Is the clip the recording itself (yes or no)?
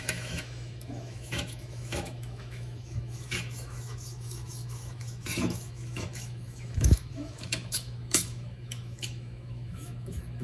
no